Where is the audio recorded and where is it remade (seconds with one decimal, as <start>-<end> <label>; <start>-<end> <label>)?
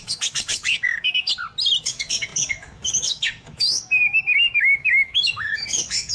0.0-1.3 remade; 1.3-1.8 recorded; 1.8-6.1 remade